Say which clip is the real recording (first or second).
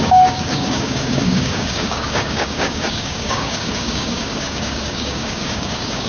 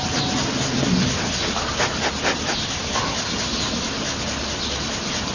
second